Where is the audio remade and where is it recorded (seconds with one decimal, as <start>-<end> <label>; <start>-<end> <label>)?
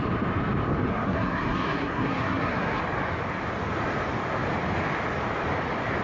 0.0-0.9 recorded; 0.9-2.8 remade; 2.8-6.0 recorded